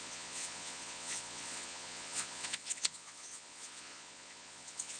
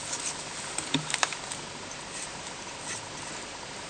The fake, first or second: first